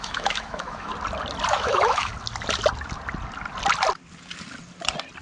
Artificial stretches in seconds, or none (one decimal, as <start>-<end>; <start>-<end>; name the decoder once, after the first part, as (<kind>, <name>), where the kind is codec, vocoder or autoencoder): 0.0-0.9 (autoencoder, DAC-VAE); 1.5-2.1